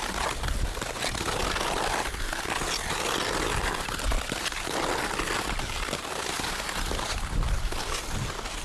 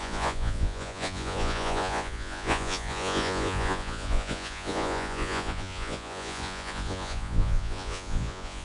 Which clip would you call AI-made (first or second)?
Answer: second